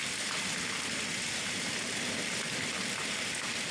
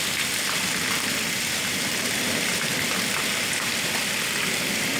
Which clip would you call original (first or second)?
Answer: first